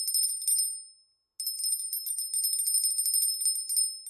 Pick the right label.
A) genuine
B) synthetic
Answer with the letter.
A